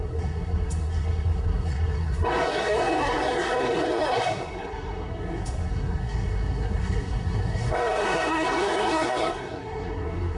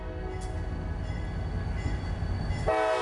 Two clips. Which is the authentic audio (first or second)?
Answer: second